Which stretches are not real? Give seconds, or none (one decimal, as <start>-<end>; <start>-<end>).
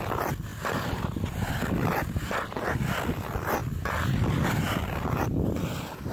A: none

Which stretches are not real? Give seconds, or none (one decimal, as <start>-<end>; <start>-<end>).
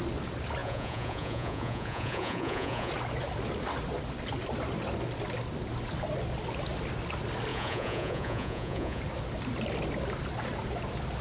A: 0.6-2.9; 7.5-9.0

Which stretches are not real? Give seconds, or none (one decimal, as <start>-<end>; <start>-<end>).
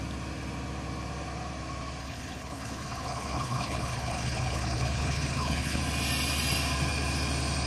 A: 2.0-5.8